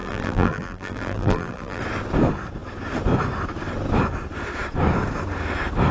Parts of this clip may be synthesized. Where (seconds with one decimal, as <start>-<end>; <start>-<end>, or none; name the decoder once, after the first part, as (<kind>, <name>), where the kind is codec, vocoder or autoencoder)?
0.0-1.8 (vocoder, BigVGAN v2)